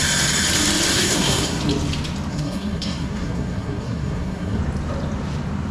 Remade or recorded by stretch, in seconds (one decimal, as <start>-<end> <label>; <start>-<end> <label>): 0.0-0.9 recorded; 0.9-1.6 remade; 1.6-2.3 recorded; 2.3-4.6 remade; 4.6-5.7 recorded